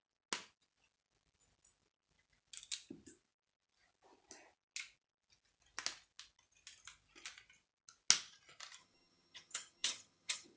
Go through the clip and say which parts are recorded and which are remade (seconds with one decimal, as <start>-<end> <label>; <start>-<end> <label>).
0.0-8.8 recorded; 8.8-10.6 remade